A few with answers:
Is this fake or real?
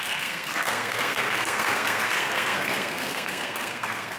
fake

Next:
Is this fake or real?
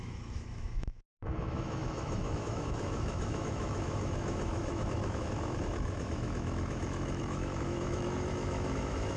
fake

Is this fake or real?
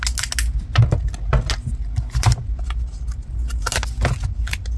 real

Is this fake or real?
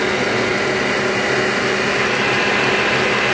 real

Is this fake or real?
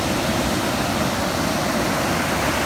real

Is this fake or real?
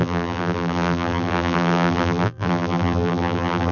fake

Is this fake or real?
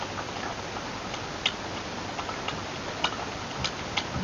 real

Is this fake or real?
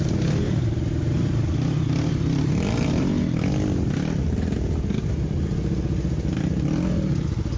real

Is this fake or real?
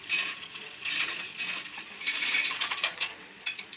fake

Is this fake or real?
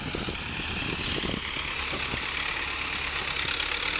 real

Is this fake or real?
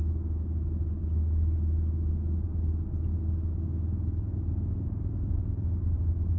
real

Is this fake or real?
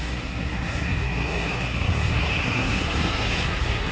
fake